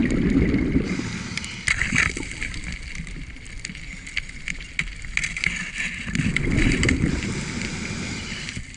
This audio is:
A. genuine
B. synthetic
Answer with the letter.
A